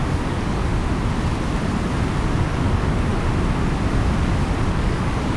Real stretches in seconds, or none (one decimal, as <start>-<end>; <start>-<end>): 0.7-2.4; 3.1-4.7